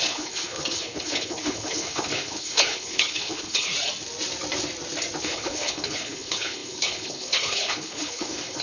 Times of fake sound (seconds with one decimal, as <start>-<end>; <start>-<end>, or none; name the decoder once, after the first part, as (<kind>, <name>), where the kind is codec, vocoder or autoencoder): 0.0-3.7 (codec, HILCodec); 5.2-8.6